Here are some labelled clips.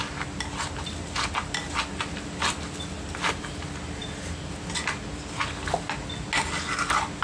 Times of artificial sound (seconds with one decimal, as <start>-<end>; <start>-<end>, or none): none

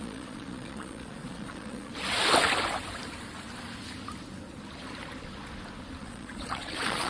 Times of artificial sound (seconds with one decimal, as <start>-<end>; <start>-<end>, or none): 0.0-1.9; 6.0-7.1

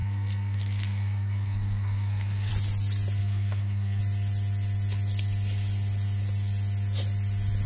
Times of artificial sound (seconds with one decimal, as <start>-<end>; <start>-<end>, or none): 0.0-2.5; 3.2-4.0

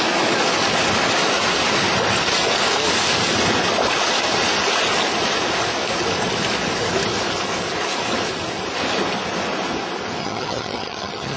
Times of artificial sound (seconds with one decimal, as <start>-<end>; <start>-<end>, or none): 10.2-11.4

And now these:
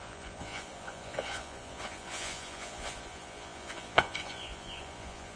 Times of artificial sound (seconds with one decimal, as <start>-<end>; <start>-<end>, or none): 0.0-5.4

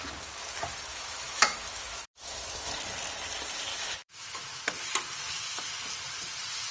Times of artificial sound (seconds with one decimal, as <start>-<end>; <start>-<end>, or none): 0.9-2.7; 3.7-4.6